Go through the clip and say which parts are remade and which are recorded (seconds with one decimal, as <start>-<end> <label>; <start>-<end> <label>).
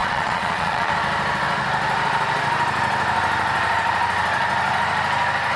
0.0-0.9 remade; 0.9-5.6 recorded